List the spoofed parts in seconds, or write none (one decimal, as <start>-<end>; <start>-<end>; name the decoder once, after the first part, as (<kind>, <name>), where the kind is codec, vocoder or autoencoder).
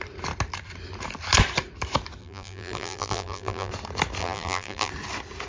2.2-3.7 (vocoder, BigVGAN v2); 4.2-4.9